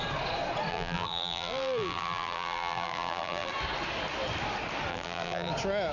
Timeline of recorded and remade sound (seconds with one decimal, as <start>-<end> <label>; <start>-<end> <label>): 0.0-0.7 recorded; 0.7-3.5 remade; 3.5-4.9 recorded; 4.9-5.5 remade; 5.5-5.9 recorded